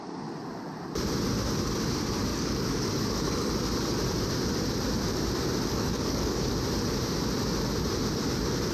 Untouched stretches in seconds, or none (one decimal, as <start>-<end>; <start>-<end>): 0.0-2.3; 3.5-5.7; 6.5-8.7